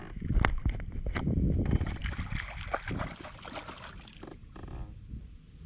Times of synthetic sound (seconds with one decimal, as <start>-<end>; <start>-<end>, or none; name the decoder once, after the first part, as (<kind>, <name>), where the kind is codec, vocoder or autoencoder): none